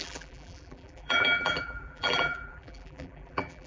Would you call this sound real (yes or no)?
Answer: no